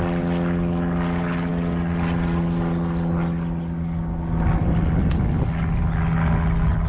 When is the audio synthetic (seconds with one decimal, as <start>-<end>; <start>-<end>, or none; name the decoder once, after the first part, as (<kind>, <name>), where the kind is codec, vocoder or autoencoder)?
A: none